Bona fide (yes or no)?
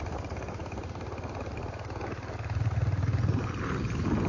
yes